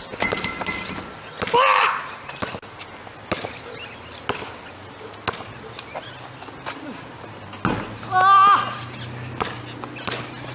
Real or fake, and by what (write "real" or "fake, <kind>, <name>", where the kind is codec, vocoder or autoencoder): real